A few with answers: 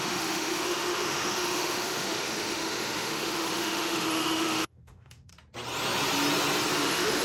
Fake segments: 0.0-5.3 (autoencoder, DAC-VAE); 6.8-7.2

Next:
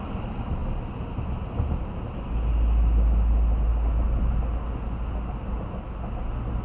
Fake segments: none

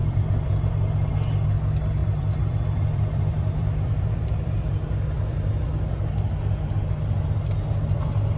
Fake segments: 0.0-0.7 (vocoder, BigVGAN v2); 2.0-4.7

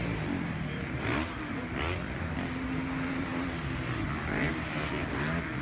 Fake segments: none

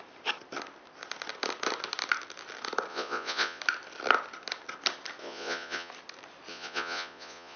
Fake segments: 2.9-3.6 (vocoder, Vocos); 5.2-5.9; 6.5-7.6

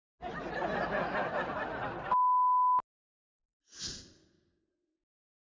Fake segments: none

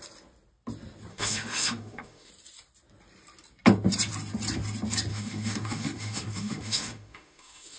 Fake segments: 1.1-2.3 (autoencoder, DAC-VAE); 5.1-7.8